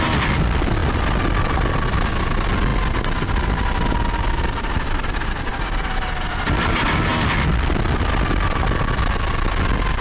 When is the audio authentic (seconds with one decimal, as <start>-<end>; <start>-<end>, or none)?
0.0-10.0